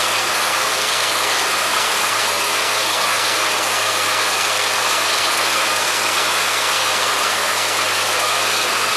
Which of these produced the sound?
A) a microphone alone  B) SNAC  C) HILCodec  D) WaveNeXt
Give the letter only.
B